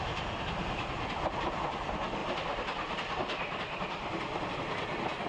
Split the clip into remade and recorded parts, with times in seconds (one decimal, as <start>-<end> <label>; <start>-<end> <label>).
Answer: 0.0-5.3 recorded